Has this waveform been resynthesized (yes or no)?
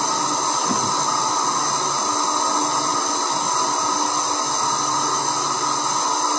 no